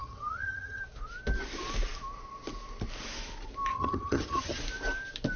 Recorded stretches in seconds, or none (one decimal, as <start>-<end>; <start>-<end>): 0.8-3.7; 4.6-5.4